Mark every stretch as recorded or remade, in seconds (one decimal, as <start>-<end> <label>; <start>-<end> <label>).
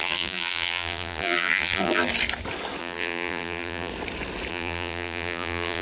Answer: 0.0-2.1 remade; 2.1-2.8 recorded; 2.8-3.9 remade; 3.9-4.5 recorded; 4.5-5.8 remade